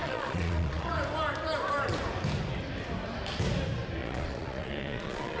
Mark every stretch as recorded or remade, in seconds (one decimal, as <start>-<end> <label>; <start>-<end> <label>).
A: 0.0-1.0 remade; 1.0-4.0 recorded; 4.0-5.4 remade